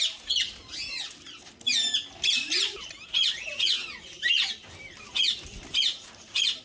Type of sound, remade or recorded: recorded